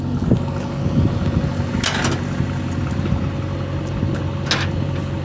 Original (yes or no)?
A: yes